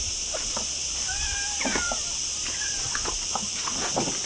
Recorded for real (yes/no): yes